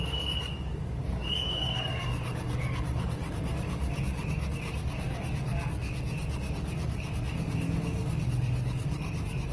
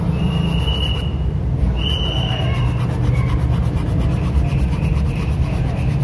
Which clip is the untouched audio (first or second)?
second